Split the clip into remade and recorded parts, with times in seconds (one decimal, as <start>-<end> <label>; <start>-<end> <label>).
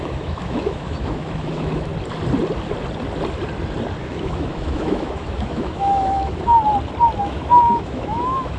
0.0-1.9 remade; 1.9-4.0 recorded; 4.0-6.5 remade; 6.5-7.2 recorded; 7.2-8.6 remade